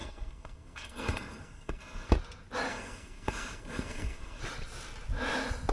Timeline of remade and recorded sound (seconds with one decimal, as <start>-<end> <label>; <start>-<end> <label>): 0.0-2.1 remade; 2.1-2.7 recorded; 2.7-4.4 remade; 4.4-5.7 recorded